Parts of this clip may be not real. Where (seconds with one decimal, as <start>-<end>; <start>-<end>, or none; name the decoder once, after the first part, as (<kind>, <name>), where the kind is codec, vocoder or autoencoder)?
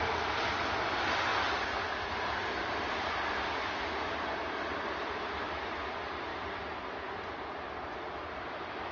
none